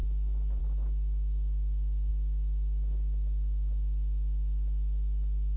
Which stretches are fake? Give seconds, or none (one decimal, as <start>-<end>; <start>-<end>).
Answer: none

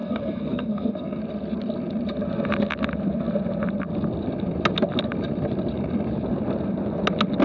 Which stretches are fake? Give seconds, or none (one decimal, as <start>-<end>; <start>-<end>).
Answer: 0.0-1.2

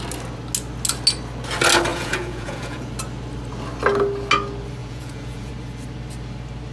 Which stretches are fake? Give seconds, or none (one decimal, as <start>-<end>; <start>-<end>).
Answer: 1.9-2.9; 4.8-5.5